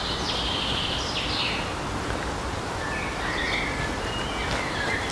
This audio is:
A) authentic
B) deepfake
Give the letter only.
A